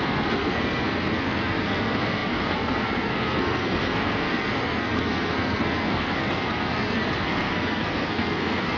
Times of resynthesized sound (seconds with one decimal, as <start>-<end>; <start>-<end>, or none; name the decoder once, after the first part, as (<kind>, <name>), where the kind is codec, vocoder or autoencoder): 0.0-8.8 (codec, SNAC)